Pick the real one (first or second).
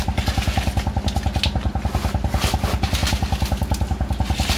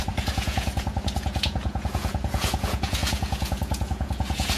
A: first